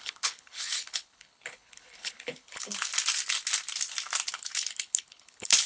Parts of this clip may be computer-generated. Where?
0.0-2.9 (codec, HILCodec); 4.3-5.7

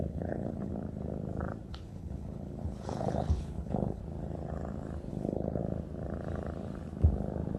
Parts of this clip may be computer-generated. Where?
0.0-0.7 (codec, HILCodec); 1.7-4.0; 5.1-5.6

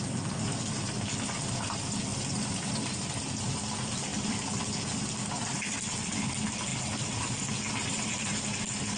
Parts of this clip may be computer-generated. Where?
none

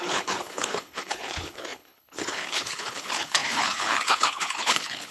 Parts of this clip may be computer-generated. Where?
0.0-5.1 (codec, HILCodec)

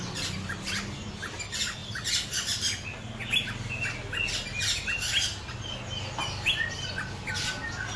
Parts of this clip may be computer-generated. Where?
none

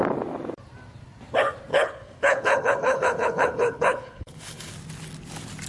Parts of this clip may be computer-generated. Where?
1.7-4.7 (codec, HILCodec)

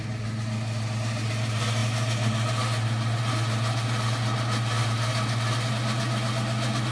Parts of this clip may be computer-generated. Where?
none